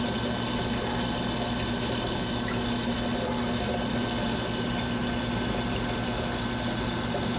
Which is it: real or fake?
real